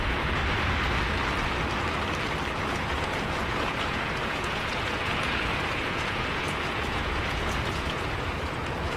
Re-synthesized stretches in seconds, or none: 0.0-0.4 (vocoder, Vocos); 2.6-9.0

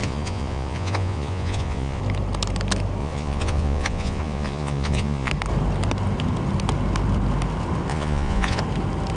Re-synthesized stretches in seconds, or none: 0.0-2.0 (vocoder, Vocos); 3.0-5.3; 7.9-8.6

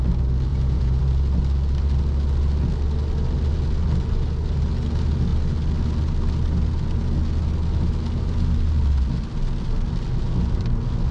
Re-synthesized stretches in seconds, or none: 0.5-1.0 (vocoder, Vocos)

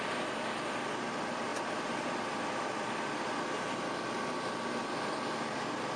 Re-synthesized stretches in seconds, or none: none

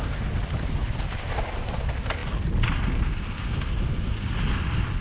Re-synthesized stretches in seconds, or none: none